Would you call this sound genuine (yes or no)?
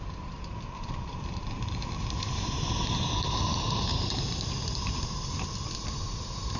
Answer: no